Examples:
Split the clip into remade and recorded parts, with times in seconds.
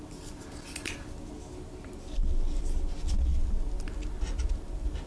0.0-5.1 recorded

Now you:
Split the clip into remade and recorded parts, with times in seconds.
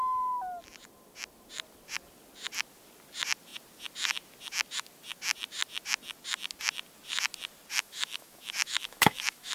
0.0-7.7 recorded; 7.7-9.5 remade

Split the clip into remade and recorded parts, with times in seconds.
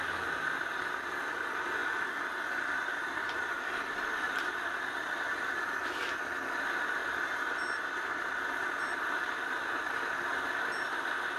0.0-1.8 recorded; 1.8-6.3 remade; 6.3-11.4 recorded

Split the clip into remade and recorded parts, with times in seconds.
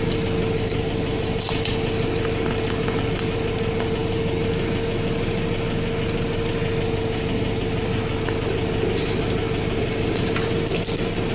0.0-11.3 recorded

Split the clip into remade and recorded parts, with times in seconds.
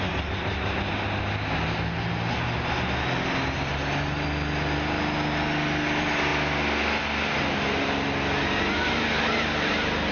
0.0-10.1 recorded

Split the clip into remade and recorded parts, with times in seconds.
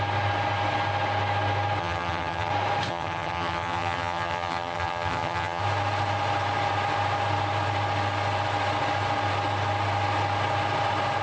0.0-1.8 recorded; 1.8-2.5 remade; 2.5-2.9 recorded; 2.9-5.6 remade; 5.6-11.2 recorded